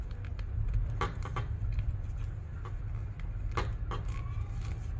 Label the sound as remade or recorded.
recorded